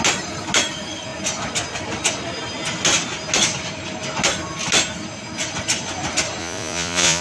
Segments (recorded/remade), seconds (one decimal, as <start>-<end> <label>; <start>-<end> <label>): 0.0-6.4 recorded; 6.4-7.2 remade